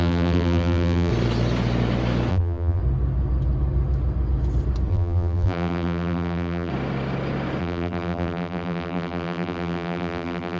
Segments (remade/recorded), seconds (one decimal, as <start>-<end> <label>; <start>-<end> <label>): 0.0-1.1 remade; 1.1-2.3 recorded; 2.3-2.8 remade; 2.8-4.9 recorded; 4.9-6.7 remade; 6.7-7.6 recorded; 7.6-10.6 remade